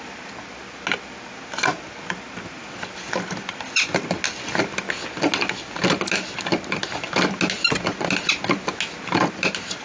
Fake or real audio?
real